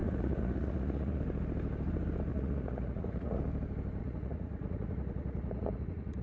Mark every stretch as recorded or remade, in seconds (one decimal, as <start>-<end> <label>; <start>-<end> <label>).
0.0-1.2 remade; 1.2-2.3 recorded; 2.3-3.4 remade; 3.4-4.0 recorded; 4.0-6.2 remade